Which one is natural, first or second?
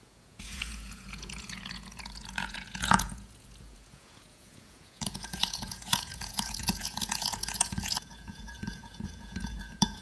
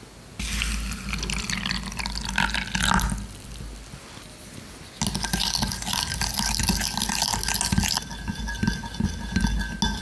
second